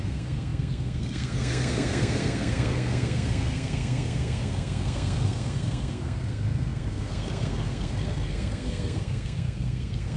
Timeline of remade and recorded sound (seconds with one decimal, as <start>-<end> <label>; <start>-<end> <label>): 0.0-10.2 remade